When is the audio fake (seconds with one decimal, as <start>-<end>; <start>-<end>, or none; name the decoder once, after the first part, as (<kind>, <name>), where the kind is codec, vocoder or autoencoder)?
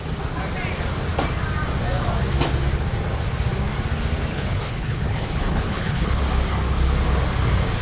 4.3-6.2 (codec, HILCodec)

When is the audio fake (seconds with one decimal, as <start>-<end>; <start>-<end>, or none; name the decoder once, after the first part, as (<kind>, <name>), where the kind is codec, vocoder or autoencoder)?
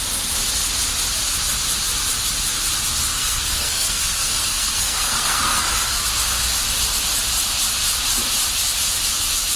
3.1-6.1 (codec, SNAC)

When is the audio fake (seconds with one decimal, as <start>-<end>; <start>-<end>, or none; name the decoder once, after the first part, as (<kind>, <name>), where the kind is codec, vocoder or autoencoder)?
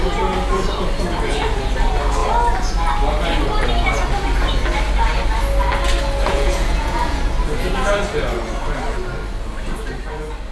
6.3-7.2 (vocoder, Vocos)